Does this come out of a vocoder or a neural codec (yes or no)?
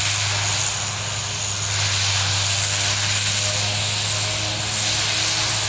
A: no